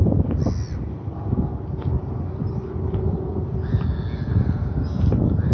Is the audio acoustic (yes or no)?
yes